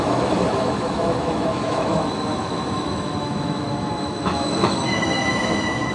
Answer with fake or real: fake